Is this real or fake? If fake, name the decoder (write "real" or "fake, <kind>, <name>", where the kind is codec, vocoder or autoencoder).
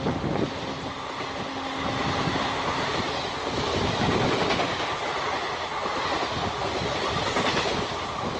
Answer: real